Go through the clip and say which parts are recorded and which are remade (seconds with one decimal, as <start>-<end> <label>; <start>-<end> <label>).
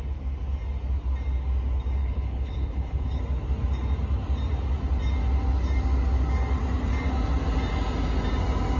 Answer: 0.0-2.0 recorded; 2.0-3.2 remade; 3.2-8.8 recorded